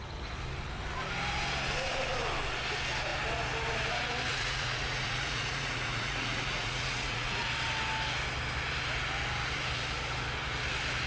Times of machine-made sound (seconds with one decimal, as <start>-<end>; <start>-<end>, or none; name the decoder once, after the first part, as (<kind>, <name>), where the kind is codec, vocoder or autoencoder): 4.3-7.5 (vocoder, Vocos)